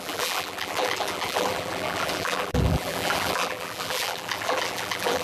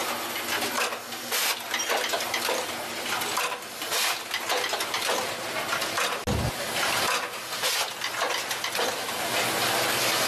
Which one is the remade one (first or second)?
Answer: first